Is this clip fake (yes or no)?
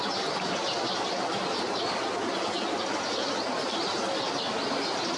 no